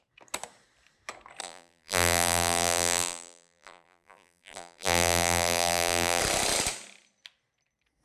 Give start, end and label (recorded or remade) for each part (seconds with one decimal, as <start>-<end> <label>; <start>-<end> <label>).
0.0-1.4 recorded; 1.4-6.2 remade; 6.2-8.0 recorded